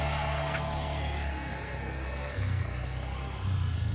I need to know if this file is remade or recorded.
remade